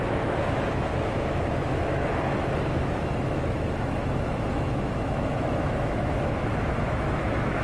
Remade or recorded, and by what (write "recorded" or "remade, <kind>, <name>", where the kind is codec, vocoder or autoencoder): remade, autoencoder, DAC-VAE